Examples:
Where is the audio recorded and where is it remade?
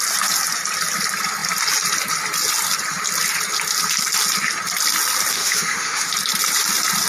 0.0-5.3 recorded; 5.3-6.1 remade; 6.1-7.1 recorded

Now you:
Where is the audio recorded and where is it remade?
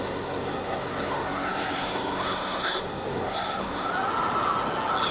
0.0-3.9 remade; 3.9-5.1 recorded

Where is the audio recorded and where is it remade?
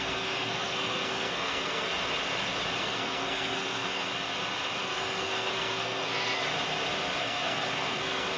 0.0-2.0 remade; 2.0-2.8 recorded; 2.8-4.1 remade; 4.1-4.8 recorded; 4.8-6.4 remade; 6.4-7.2 recorded; 7.2-8.4 remade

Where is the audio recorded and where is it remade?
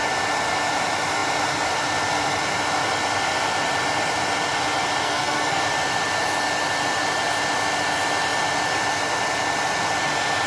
0.0-5.0 recorded; 5.0-5.6 remade; 5.6-10.5 recorded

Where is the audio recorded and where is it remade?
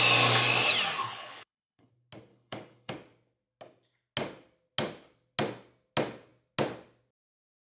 0.0-1.0 recorded; 1.0-1.9 remade; 1.9-2.3 recorded; 2.3-2.9 remade; 2.9-7.7 recorded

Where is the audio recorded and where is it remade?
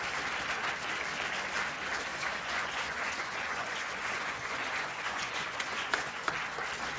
0.0-2.1 recorded; 2.1-6.3 remade; 6.3-7.0 recorded